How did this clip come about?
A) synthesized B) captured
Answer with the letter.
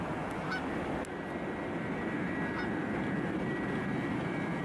B